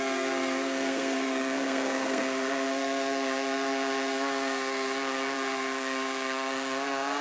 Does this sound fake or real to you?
fake